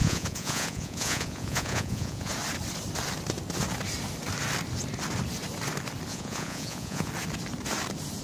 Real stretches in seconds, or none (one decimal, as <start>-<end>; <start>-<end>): 2.3-6.1; 7.1-8.2